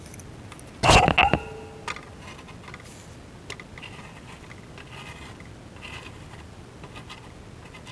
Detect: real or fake real